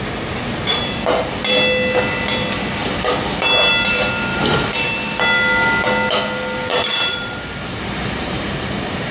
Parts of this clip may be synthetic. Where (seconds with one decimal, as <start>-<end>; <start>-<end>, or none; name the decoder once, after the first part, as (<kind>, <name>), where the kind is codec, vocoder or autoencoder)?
4.3-5.2 (vocoder, BigVGAN v2); 6.7-9.1